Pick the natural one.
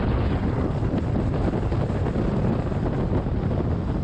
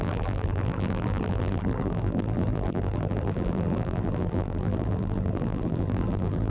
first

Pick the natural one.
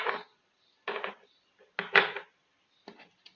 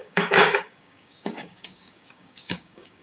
first